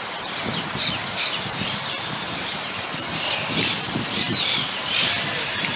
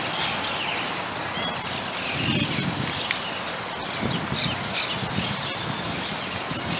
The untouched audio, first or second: second